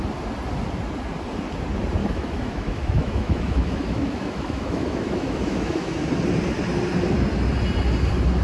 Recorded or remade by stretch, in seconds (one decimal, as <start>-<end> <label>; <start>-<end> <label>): 0.0-2.0 recorded; 2.0-6.1 remade; 6.1-8.4 recorded